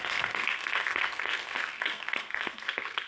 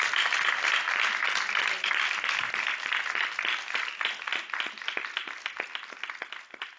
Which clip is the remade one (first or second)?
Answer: first